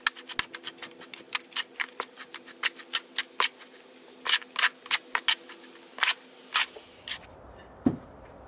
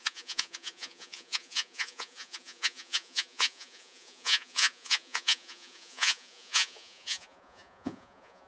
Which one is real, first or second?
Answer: first